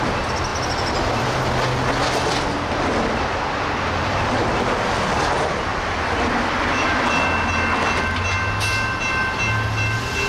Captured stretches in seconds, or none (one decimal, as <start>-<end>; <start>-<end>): 0.0-5.7; 7.0-10.3